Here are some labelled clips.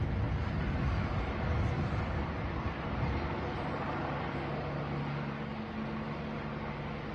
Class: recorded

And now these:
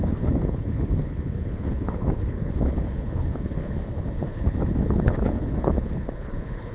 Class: remade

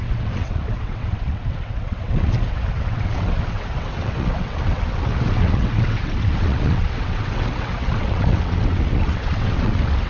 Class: remade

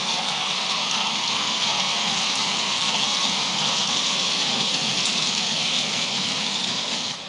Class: remade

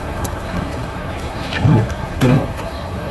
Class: remade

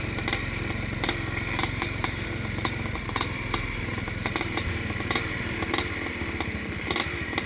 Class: remade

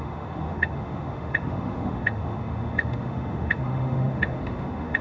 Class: remade